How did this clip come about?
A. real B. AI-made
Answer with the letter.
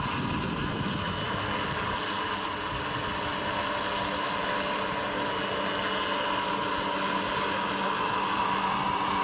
A